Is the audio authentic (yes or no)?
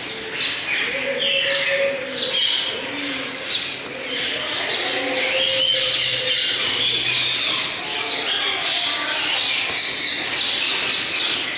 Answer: yes